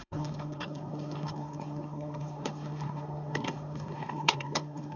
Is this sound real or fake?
fake